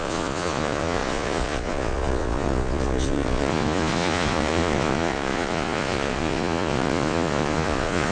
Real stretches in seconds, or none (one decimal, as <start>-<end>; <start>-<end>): none